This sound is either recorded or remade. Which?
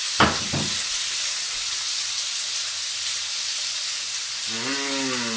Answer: recorded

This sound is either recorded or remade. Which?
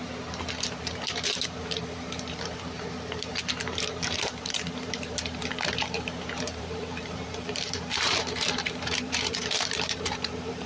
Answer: remade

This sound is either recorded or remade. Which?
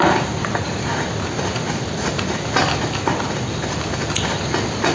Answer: remade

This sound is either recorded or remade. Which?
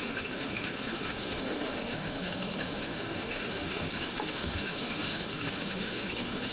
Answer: remade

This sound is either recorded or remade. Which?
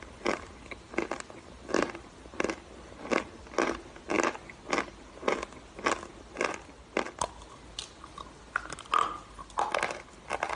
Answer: recorded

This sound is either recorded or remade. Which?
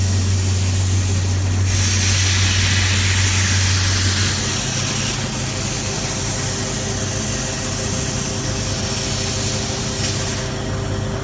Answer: recorded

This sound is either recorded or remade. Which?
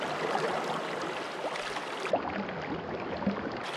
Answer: recorded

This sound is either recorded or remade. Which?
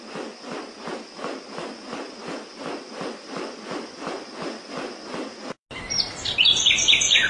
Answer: recorded